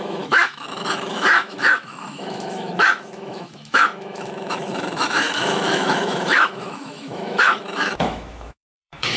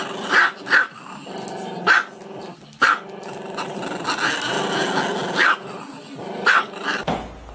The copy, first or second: first